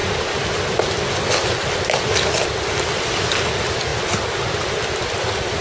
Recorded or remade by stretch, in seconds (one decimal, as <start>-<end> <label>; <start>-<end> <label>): 0.0-5.6 recorded